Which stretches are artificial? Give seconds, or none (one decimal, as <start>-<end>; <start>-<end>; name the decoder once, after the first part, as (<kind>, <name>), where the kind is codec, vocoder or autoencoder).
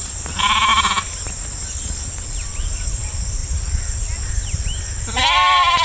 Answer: none